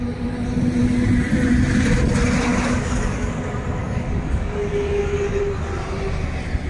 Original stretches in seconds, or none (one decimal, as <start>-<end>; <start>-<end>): 0.0-2.5; 3.3-3.8; 5.4-6.7